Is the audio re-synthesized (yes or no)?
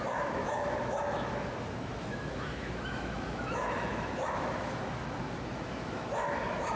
yes